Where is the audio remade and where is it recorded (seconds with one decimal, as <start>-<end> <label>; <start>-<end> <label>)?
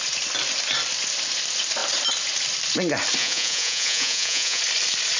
0.0-3.2 recorded; 3.2-4.6 remade; 4.6-5.2 recorded